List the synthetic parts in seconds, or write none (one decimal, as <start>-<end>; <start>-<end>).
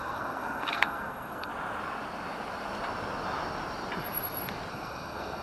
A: 0.0-1.5; 4.7-5.4